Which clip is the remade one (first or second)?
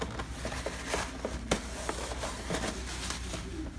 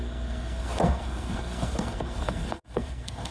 second